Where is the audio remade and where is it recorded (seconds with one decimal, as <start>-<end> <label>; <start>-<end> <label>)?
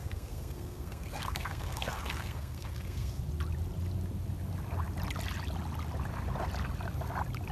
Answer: 0.0-3.2 remade; 3.2-7.5 recorded